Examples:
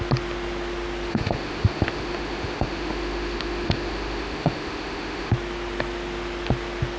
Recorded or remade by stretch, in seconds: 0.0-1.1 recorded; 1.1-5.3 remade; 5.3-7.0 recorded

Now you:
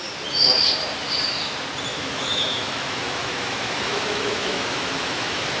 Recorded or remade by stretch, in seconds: 0.0-1.9 recorded; 1.9-5.6 remade

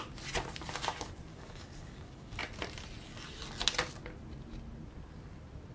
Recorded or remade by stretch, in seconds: 0.0-1.3 recorded; 1.3-2.4 remade; 2.4-5.7 recorded